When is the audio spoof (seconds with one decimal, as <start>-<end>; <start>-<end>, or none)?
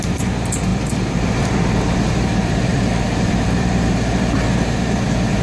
0.0-5.4